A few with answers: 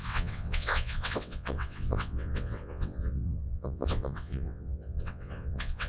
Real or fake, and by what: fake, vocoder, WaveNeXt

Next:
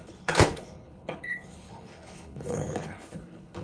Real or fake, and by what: fake, codec, HILCodec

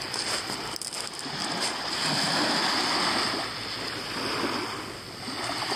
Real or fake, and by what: real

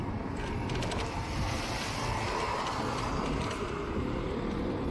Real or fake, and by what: real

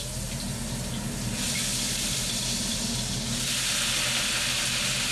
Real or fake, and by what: real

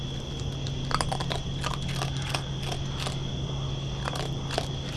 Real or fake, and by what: real